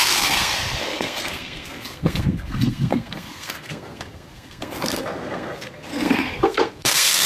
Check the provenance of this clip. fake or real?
fake